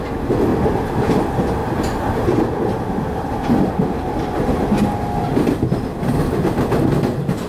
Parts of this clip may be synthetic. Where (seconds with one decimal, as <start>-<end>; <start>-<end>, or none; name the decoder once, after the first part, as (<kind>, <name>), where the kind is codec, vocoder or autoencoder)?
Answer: 0.5-1.1 (vocoder, BigVGAN v2); 1.6-3.7